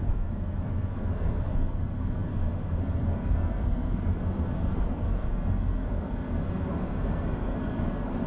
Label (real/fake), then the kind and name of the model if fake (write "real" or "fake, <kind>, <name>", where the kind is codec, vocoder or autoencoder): fake, codec, SNAC